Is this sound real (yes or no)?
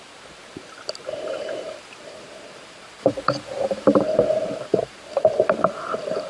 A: no